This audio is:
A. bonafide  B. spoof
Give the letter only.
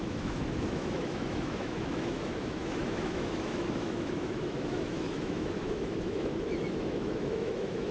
B